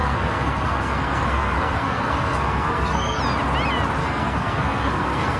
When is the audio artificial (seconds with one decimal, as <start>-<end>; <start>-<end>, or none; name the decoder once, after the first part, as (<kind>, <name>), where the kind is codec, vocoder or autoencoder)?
0.0-3.2 (codec, SNAC); 4.0-5.4